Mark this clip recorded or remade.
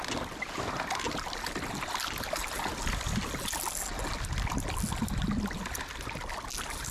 recorded